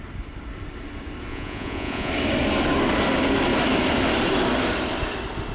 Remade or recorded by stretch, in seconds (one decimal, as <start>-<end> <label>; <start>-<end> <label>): 0.0-1.3 recorded; 1.3-2.1 remade; 2.1-5.5 recorded